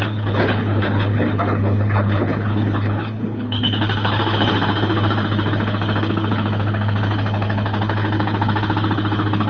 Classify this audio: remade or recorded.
remade